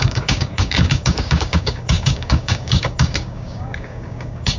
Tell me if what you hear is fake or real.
fake